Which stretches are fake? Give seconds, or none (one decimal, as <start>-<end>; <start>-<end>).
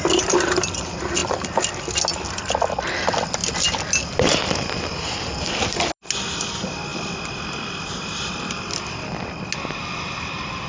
none